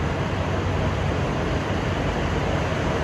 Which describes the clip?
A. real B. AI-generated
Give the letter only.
A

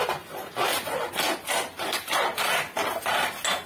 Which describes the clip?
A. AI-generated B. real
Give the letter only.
B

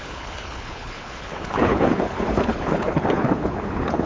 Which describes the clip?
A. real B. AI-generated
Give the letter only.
B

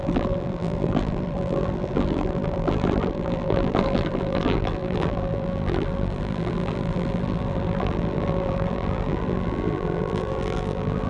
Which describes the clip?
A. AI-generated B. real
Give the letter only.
A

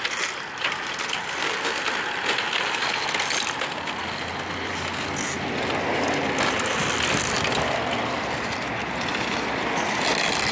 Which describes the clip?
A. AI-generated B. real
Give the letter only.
B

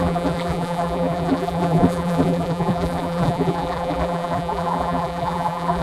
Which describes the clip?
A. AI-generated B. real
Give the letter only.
A